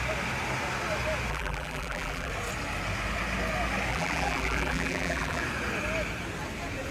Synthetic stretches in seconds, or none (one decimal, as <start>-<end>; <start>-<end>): 1.3-2.3; 3.9-5.4